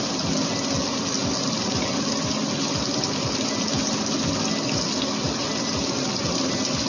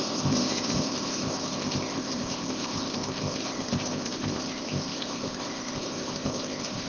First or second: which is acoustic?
first